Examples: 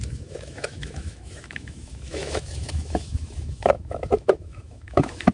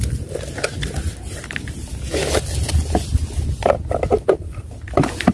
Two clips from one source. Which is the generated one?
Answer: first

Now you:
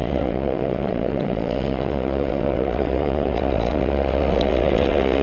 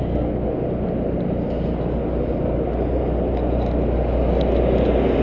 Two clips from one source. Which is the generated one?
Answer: first